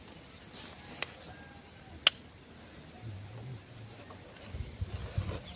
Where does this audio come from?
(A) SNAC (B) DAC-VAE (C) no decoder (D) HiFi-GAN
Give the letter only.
C